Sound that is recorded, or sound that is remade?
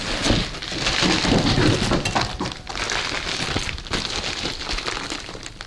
recorded